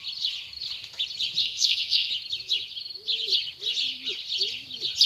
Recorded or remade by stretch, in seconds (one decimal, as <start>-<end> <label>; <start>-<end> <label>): 0.0-1.4 recorded; 1.4-2.1 remade; 2.1-5.1 recorded

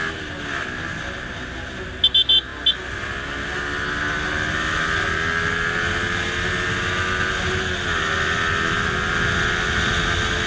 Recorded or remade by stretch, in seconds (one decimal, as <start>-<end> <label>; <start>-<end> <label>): 0.0-10.5 recorded

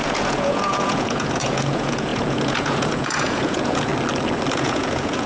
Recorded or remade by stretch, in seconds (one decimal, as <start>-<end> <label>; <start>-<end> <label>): 0.0-3.9 remade; 3.9-4.5 recorded; 4.5-5.3 remade

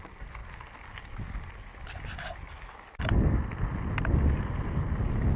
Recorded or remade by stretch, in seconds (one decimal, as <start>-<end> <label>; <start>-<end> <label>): 0.0-5.4 recorded

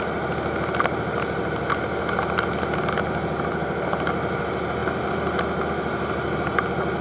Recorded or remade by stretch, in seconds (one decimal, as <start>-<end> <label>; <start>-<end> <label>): 0.0-7.0 recorded

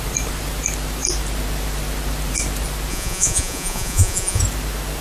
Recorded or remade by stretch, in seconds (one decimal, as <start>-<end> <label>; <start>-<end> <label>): 0.0-2.9 recorded; 2.9-4.4 remade; 4.4-5.0 recorded

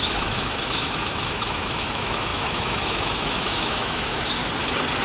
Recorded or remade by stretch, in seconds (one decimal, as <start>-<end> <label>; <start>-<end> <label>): 0.0-4.4 remade; 4.4-5.0 recorded

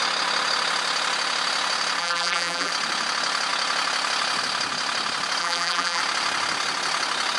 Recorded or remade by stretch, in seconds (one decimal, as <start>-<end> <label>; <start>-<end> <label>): 0.0-2.0 recorded; 2.0-2.7 remade; 2.7-5.4 recorded; 5.4-6.0 remade; 6.0-7.4 recorded